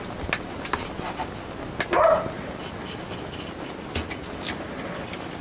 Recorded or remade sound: recorded